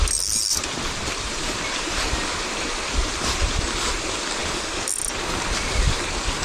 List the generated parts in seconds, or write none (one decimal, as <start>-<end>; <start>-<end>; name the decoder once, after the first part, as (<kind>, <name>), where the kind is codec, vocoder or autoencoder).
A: 0.5-1.6 (vocoder, BigVGAN v2); 3.0-3.6